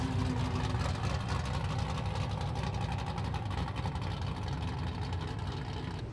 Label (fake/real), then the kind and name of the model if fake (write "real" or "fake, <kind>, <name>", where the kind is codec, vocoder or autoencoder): real